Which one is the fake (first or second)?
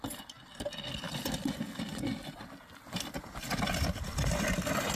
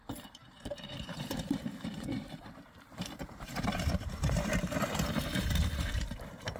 second